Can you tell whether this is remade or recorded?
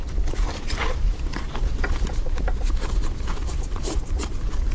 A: recorded